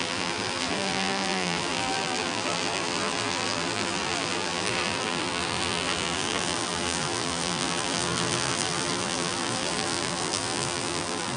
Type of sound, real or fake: fake